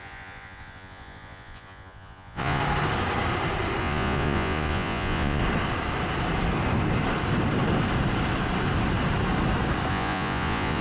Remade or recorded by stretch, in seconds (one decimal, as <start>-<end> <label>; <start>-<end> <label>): 0.0-2.6 remade; 2.6-3.8 recorded; 3.8-5.4 remade; 5.4-9.9 recorded; 9.9-10.8 remade